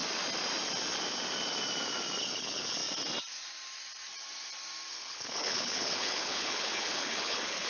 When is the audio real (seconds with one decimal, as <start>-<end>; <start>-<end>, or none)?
0.0-2.2; 2.8-4.9